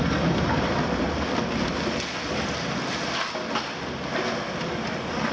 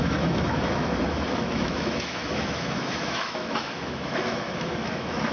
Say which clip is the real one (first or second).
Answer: first